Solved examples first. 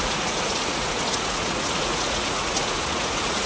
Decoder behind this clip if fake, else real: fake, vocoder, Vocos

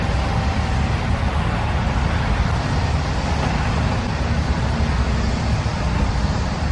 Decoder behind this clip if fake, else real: real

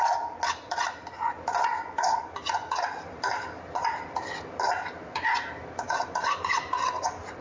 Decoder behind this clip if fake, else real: real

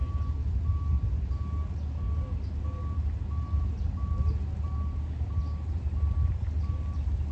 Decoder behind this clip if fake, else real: real